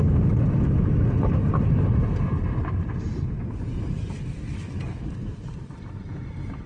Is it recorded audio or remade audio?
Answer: recorded